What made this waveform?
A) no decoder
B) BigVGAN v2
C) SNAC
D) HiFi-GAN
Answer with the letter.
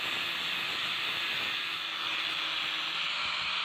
A